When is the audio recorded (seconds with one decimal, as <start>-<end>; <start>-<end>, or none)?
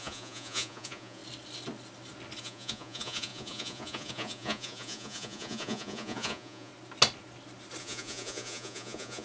1.2-2.4; 6.7-7.8